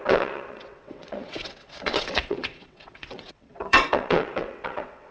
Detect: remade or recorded remade